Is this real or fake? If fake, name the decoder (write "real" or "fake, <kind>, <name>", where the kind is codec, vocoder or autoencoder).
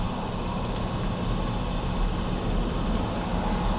real